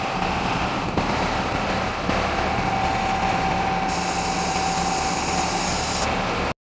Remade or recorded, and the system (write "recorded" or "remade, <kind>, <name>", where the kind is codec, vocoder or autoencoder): recorded